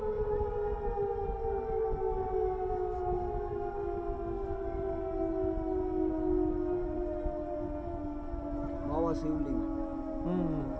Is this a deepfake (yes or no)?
no